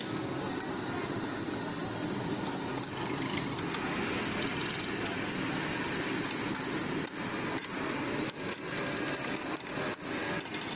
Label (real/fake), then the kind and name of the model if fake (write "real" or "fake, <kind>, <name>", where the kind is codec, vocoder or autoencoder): real